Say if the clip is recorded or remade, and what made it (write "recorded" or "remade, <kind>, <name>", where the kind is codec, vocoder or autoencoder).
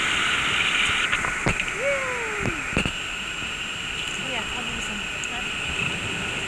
recorded